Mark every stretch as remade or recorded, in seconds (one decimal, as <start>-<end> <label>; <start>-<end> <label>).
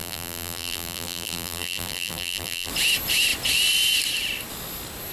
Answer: 0.0-2.7 remade; 2.7-5.1 recorded